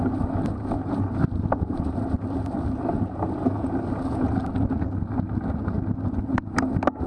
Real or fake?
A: real